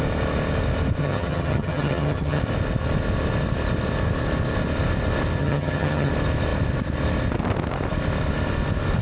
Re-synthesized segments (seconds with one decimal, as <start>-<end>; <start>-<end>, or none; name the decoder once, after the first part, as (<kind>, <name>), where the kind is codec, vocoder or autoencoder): 1.0-2.4 (vocoder, HiFi-GAN); 5.4-6.1